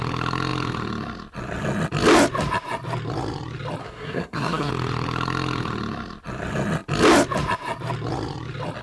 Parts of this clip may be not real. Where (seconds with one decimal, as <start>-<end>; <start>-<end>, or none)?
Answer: 3.8-4.7